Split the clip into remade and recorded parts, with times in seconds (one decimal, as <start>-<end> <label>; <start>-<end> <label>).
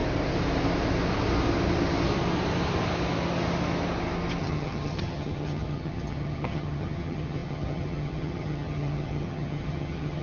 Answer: 0.0-4.4 recorded; 4.4-10.2 remade